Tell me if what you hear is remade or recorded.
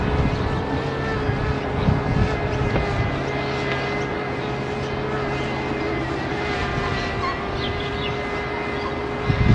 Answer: recorded